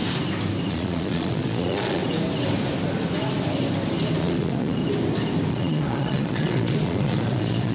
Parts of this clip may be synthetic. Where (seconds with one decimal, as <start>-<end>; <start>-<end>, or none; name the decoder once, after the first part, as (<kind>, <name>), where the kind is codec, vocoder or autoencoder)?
0.7-2.0 (vocoder, Vocos); 4.2-4.8; 5.5-7.7